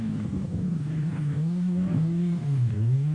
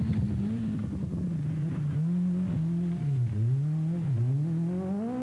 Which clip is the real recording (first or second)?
second